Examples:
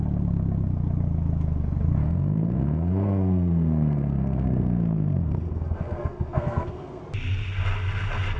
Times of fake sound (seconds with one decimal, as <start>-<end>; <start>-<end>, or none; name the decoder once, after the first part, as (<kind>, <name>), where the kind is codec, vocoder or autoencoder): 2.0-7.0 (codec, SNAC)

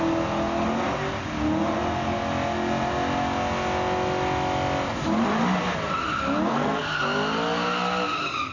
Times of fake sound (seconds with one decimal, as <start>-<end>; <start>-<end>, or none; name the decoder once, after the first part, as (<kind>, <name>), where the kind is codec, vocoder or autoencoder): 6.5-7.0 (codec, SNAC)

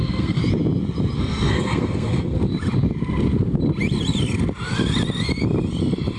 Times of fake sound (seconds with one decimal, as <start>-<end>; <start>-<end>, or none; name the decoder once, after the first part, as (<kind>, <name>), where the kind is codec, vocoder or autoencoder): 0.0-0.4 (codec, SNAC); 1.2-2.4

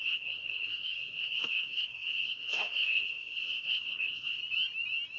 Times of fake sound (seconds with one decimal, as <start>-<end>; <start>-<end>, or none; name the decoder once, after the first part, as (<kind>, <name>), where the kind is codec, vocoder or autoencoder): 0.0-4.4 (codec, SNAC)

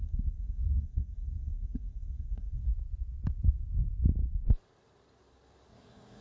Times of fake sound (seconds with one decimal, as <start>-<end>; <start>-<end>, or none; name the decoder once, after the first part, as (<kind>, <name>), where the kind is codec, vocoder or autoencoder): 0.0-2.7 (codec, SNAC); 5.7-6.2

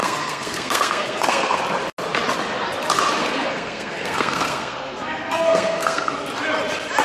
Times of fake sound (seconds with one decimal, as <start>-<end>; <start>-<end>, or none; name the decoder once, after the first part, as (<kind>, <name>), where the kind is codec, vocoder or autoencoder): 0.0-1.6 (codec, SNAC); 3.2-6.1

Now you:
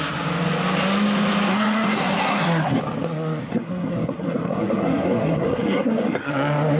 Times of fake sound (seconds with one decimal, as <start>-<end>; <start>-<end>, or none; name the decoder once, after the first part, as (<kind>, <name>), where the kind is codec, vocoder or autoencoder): 1.5-2.8 (codec, SNAC); 3.5-6.3

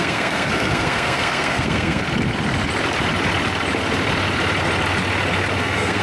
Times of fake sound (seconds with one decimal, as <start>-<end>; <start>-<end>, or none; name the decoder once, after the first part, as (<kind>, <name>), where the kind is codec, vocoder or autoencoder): 0.0-2.0 (codec, SNAC); 5.6-6.0